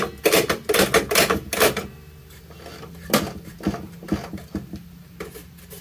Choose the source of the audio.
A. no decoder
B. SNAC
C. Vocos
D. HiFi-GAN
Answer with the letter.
A